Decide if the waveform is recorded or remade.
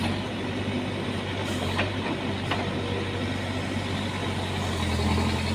recorded